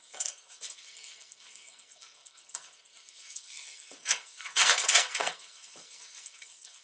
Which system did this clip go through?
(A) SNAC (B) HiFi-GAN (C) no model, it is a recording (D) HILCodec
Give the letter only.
A